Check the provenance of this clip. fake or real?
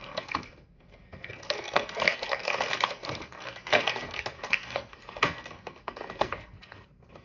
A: fake